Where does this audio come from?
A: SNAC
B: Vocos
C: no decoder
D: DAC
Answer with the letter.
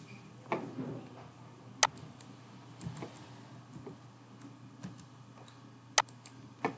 C